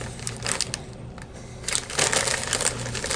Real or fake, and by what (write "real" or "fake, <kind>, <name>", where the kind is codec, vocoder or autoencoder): real